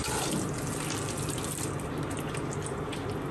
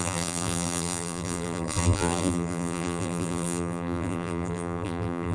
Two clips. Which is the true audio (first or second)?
first